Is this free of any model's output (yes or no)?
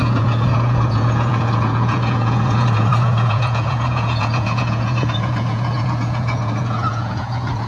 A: no